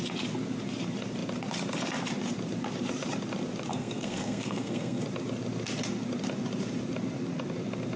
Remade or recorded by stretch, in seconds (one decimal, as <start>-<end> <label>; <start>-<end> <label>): 0.0-3.7 recorded; 3.7-5.0 remade; 5.0-8.0 recorded